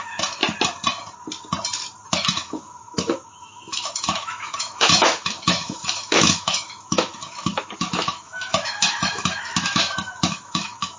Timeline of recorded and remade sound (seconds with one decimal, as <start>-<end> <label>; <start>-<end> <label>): 0.0-0.4 remade; 0.4-2.1 recorded; 2.1-11.0 remade